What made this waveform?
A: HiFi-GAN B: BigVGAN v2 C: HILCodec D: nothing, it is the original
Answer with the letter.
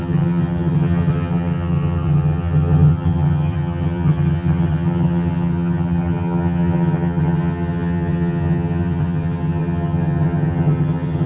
A